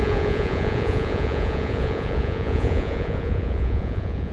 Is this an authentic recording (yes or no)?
no